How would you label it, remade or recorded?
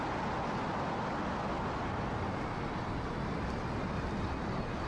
recorded